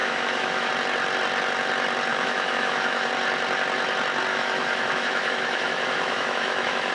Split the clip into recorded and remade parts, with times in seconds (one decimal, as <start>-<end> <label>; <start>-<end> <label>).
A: 0.0-0.7 remade; 0.7-2.1 recorded; 2.1-3.1 remade; 3.1-4.3 recorded; 4.3-6.9 remade